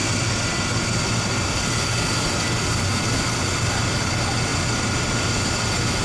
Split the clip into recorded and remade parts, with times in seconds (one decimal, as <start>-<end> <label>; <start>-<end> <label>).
0.0-4.5 recorded; 4.5-5.2 remade; 5.2-6.0 recorded